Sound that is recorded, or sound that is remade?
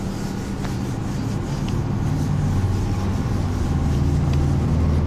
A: recorded